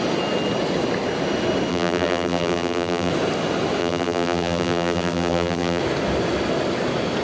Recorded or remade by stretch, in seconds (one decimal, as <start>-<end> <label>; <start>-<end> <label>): 0.0-1.7 recorded; 1.7-3.1 remade; 3.1-3.8 recorded; 3.8-5.8 remade; 5.8-7.2 recorded